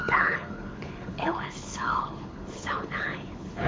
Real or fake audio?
fake